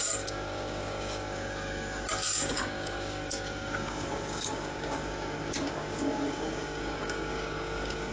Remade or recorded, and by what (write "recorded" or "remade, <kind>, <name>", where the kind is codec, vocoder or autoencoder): remade, codec, DAC